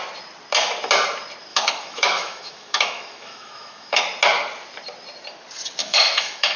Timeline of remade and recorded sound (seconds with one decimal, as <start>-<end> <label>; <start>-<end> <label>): 0.0-1.5 recorded; 1.5-4.0 remade; 4.0-5.8 recorded; 5.8-6.6 remade